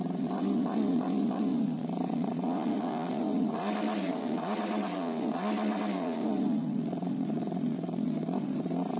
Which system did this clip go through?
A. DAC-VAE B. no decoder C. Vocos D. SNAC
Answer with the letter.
C